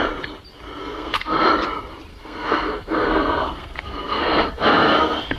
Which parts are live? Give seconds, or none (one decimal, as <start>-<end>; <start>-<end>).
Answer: 0.0-0.8; 1.5-2.1